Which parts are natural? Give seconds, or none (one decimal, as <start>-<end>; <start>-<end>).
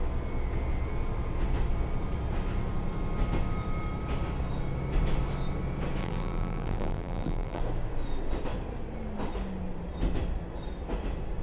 0.0-6.0; 7.6-11.4